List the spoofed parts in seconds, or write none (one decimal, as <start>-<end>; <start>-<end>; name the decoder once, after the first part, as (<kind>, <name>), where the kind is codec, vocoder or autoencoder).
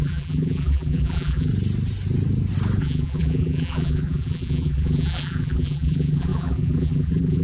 0.0-1.5 (vocoder, BigVGAN v2); 2.8-7.4